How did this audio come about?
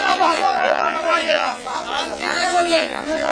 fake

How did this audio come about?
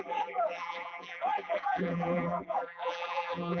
fake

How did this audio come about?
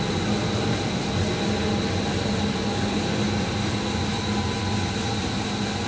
real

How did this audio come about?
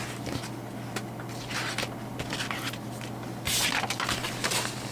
real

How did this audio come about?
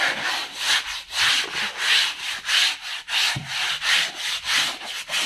real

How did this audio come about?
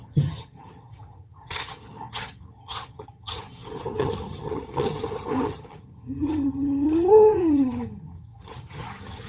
fake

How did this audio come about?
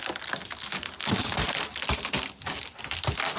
real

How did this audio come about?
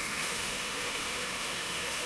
fake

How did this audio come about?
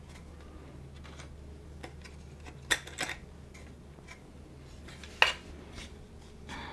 real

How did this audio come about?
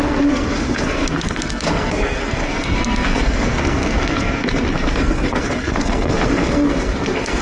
fake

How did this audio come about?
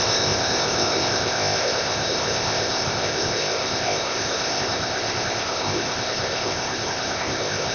fake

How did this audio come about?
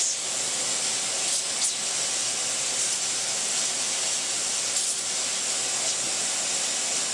real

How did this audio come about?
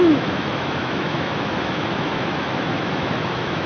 fake